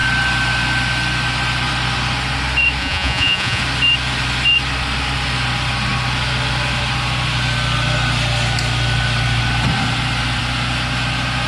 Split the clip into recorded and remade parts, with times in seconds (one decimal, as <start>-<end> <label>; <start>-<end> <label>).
0.0-2.8 recorded; 2.8-3.6 remade; 3.6-11.5 recorded